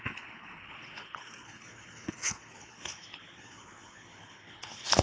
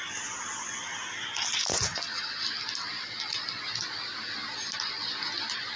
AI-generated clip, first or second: first